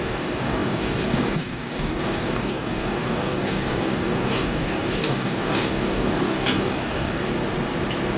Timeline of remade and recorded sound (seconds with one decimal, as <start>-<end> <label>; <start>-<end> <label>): 0.0-7.3 remade; 7.3-8.2 recorded